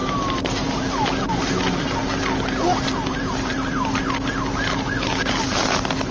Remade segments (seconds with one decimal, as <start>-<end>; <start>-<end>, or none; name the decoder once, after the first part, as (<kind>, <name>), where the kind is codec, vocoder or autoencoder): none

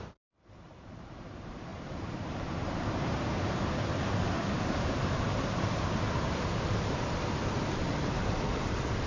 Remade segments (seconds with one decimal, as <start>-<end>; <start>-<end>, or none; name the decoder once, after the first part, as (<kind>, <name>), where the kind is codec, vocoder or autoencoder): 0.0-7.9 (vocoder, BigVGAN v2)

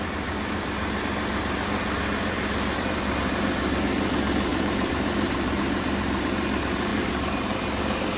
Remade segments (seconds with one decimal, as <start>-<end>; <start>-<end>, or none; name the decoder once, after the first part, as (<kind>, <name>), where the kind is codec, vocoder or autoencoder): 4.5-6.2 (vocoder, BigVGAN v2); 6.9-8.2